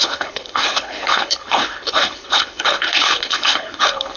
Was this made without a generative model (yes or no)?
no